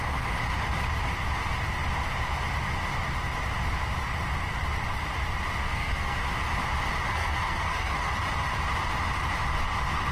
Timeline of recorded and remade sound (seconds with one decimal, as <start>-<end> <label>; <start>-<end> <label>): 0.0-5.6 recorded; 5.6-6.2 remade; 6.2-7.1 recorded; 7.1-8.1 remade; 8.1-10.1 recorded